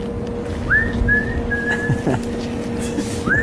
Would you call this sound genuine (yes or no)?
yes